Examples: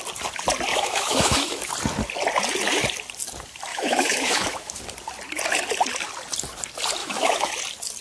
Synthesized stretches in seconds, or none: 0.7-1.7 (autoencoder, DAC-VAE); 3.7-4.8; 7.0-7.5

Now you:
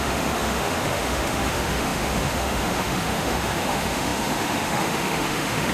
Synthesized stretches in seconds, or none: 0.0-5.7 (autoencoder, DAC-VAE)

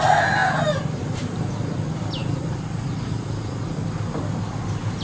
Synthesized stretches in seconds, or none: none